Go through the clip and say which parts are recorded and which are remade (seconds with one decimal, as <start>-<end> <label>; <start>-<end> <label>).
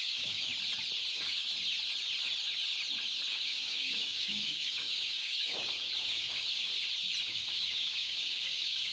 0.0-0.5 remade; 0.5-1.1 recorded; 1.1-1.5 remade; 1.5-3.3 recorded; 3.3-6.7 remade; 6.7-7.2 recorded; 7.2-8.9 remade